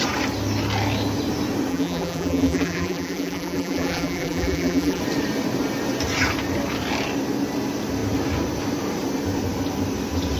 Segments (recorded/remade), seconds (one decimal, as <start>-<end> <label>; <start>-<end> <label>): 0.0-1.7 recorded; 1.7-5.0 remade; 5.0-10.4 recorded